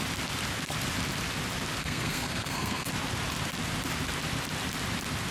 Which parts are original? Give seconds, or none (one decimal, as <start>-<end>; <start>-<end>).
0.0-1.8; 2.9-5.3